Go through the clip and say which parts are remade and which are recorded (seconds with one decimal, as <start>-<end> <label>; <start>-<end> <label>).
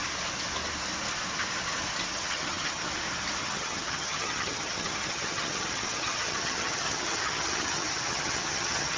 0.0-2.1 recorded; 2.1-2.9 remade; 2.9-3.4 recorded; 3.4-9.0 remade